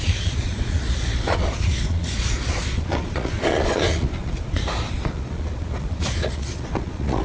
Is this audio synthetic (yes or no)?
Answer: yes